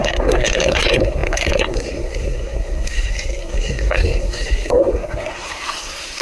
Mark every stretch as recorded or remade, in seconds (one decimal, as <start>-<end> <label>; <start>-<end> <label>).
0.0-6.2 remade